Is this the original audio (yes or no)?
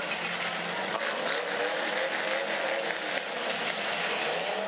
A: yes